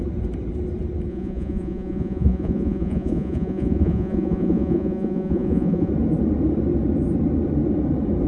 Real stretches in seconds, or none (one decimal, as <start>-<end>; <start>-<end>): 0.0-1.1; 5.9-8.3